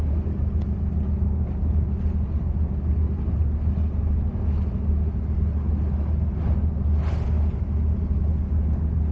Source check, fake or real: real